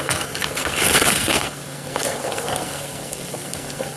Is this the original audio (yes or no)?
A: no